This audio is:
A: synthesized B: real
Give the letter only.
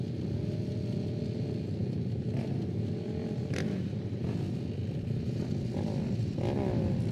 B